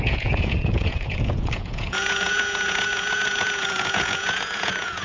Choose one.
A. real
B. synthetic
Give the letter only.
B